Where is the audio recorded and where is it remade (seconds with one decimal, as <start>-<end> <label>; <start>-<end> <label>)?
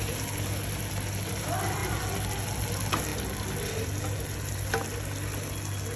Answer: 0.0-6.0 recorded